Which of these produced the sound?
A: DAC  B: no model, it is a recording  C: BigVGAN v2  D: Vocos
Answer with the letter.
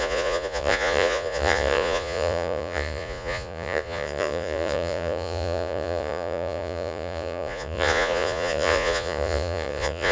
D